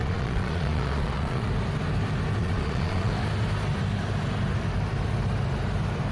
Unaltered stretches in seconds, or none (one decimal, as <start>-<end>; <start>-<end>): 1.5-2.4; 3.1-6.1